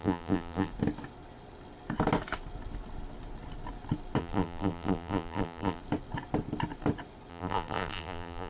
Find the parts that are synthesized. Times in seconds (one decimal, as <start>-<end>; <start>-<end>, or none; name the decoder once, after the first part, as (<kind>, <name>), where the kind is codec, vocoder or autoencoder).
0.0-0.7 (vocoder, BigVGAN v2); 4.2-5.8; 7.3-8.5